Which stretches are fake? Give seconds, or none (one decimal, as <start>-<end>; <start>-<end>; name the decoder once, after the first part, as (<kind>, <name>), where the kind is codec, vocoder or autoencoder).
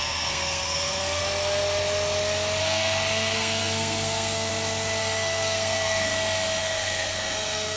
0.0-1.2 (codec, SNAC); 2.6-4.5; 5.0-6.1; 6.6-7.8